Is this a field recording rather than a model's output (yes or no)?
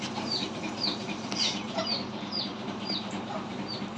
no